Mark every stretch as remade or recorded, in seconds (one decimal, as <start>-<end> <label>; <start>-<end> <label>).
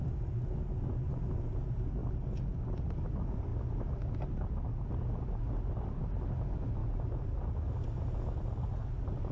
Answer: 0.0-9.3 recorded